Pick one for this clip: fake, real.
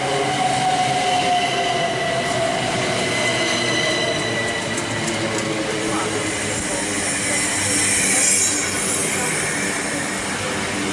real